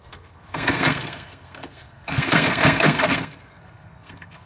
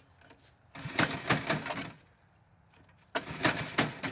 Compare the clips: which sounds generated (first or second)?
first